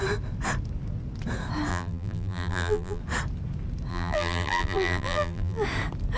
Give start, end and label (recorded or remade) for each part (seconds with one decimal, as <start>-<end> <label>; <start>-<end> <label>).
0.0-1.7 recorded; 1.7-3.0 remade; 3.0-3.9 recorded; 3.9-5.6 remade; 5.6-6.2 recorded